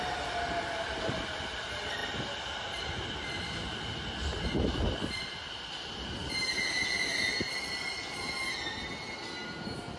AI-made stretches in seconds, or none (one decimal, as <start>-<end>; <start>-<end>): none

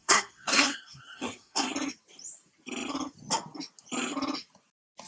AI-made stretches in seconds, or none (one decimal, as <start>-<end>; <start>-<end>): 0.0-1.7

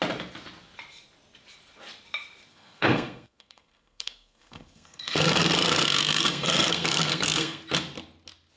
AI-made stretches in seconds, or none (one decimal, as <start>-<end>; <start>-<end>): 2.5-7.6